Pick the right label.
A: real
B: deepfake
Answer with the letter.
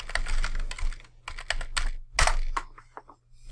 A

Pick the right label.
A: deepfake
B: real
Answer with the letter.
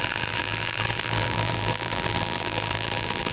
A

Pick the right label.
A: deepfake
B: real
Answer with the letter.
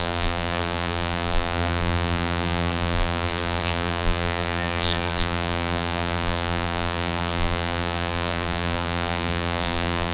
A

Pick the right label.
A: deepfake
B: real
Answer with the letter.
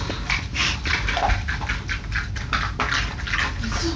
B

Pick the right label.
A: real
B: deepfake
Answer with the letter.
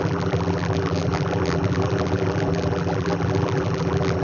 B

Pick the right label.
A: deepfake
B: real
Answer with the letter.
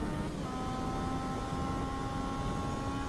B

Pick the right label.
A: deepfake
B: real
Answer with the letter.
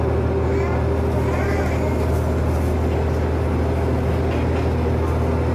B